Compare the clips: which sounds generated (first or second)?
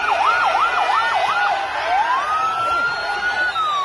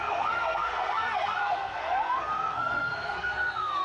second